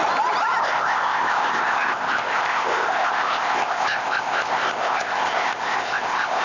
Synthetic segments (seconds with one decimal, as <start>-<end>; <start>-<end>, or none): 0.6-6.4